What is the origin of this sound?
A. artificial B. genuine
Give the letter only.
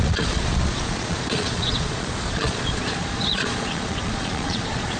A